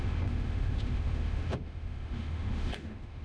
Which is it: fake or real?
fake